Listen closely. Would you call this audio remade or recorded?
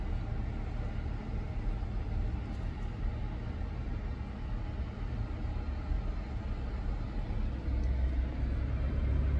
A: recorded